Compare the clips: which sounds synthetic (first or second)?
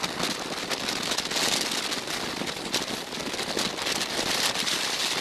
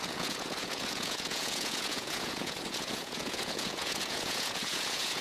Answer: second